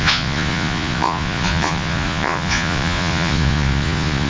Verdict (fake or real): fake